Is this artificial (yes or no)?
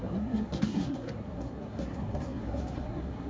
yes